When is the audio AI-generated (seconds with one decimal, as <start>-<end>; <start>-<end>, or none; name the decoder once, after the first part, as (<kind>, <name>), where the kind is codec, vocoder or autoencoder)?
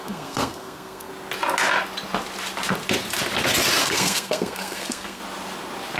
0.0-1.1 (codec, SNAC); 3.8-5.2